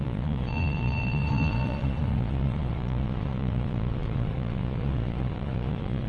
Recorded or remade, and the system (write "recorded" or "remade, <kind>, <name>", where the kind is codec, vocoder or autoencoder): remade, vocoder, Vocos